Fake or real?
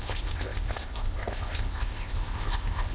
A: fake